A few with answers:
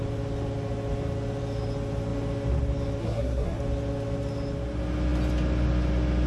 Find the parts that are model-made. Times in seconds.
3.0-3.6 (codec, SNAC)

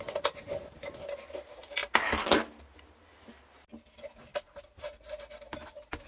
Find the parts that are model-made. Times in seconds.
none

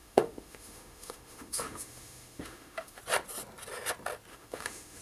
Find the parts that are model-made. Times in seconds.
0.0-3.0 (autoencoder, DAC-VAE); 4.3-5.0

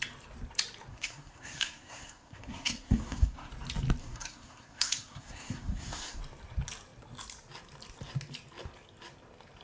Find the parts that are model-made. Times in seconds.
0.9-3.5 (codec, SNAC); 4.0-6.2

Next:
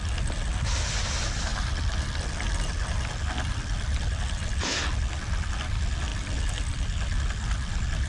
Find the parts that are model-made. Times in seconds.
none

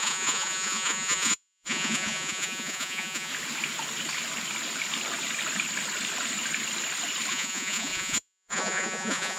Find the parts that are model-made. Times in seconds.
0.0-3.3 (vocoder, Vocos); 7.3-9.4

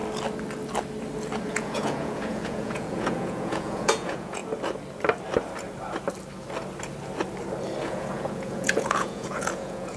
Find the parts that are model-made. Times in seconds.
1.5-4.4 (vocoder, Vocos); 7.8-10.0

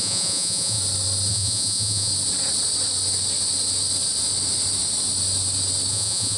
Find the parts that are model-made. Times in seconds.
0.0-0.8 (vocoder, Vocos); 1.3-2.1; 5.9-6.4